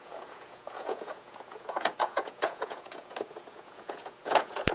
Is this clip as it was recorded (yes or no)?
no